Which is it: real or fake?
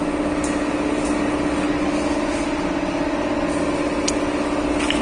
real